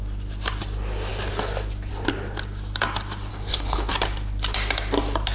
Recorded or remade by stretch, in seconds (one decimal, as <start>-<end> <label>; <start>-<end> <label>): 0.0-3.3 recorded; 3.3-3.9 remade; 3.9-5.3 recorded